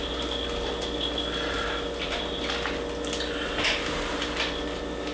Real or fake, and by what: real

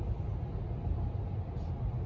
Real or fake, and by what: real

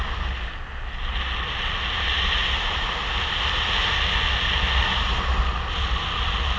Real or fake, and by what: real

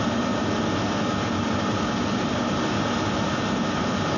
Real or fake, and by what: real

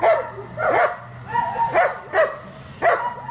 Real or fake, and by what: real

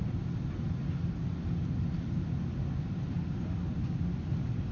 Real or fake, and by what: real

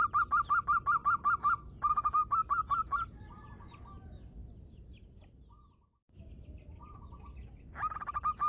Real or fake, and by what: real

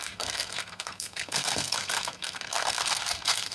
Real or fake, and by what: fake, codec, SNAC